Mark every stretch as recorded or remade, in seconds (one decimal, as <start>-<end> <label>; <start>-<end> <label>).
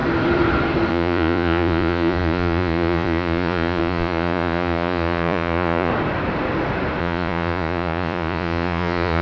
0.0-0.9 recorded; 0.9-5.9 remade; 5.9-7.0 recorded; 7.0-9.2 remade